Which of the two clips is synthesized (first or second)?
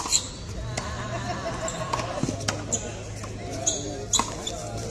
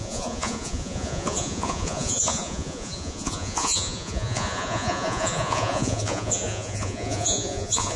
second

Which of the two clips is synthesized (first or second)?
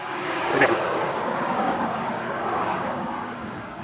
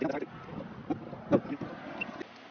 first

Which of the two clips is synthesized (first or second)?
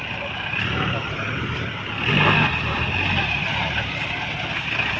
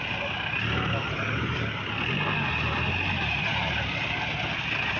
first